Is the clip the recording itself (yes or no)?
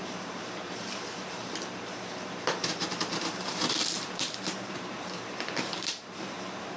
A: no